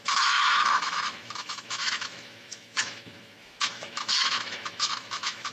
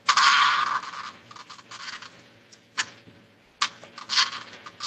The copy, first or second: first